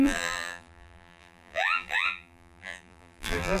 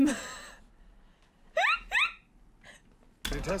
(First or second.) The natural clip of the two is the second